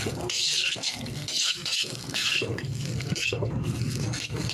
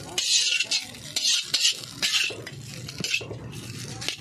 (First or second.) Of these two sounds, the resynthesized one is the first